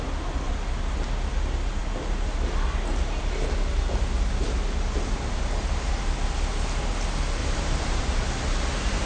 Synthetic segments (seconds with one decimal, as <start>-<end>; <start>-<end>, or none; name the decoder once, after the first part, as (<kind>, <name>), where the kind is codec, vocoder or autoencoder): 7.4-8.0 (vocoder, BigVGAN v2)